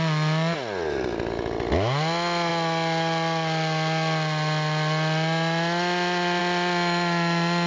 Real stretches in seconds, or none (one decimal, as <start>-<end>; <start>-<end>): 0.0-7.7